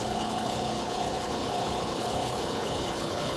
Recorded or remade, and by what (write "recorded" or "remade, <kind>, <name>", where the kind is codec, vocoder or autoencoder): remade, codec, HILCodec